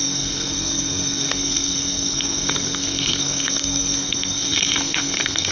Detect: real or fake fake